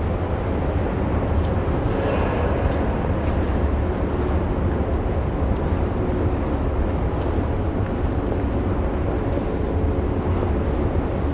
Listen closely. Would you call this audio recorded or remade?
recorded